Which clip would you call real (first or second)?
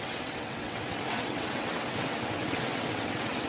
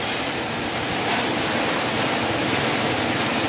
second